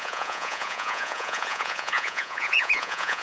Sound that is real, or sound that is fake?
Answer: fake